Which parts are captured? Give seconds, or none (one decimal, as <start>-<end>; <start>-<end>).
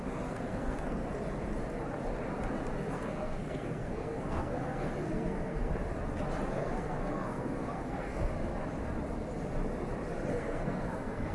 1.0-2.9; 5.7-6.5; 8.3-10.3